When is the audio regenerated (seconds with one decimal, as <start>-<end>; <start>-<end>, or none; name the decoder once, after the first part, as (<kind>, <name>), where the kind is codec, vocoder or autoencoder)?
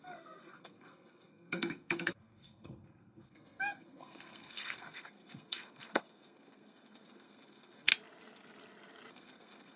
0.0-7.9 (codec, SNAC); 9.1-9.8